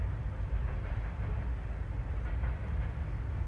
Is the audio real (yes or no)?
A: yes